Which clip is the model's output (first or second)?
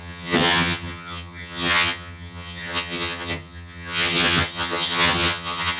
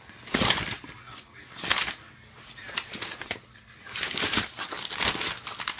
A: first